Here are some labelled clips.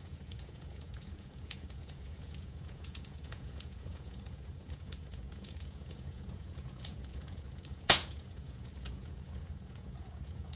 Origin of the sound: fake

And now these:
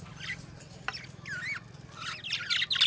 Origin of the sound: real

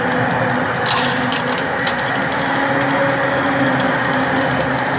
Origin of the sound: real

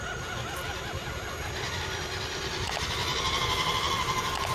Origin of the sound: real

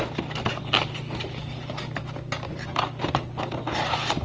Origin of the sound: real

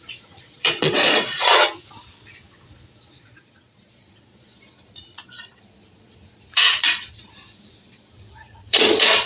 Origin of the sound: fake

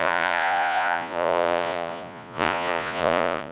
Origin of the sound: fake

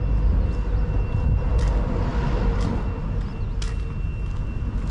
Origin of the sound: real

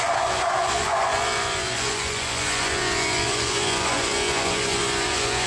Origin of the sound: fake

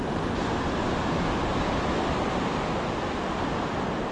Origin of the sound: real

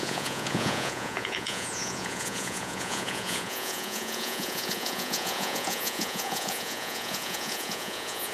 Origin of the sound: fake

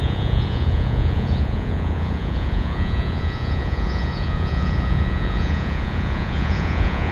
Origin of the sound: fake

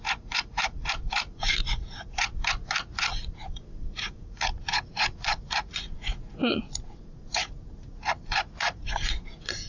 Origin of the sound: fake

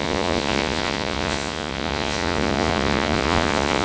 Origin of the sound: fake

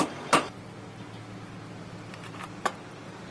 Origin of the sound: real